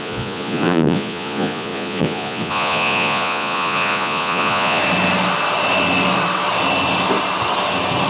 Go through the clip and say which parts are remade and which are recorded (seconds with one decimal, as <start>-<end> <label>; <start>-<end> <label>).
0.0-4.8 remade; 4.8-8.1 recorded